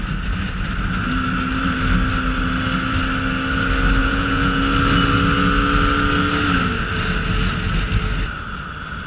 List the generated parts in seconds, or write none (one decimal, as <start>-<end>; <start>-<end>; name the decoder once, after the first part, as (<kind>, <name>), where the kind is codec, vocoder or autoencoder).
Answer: 4.0-4.6 (vocoder, Vocos)